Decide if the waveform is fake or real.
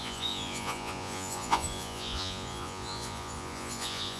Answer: fake